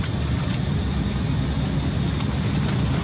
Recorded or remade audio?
recorded